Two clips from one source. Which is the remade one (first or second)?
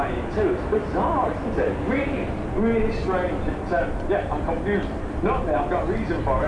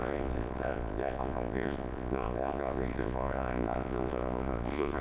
second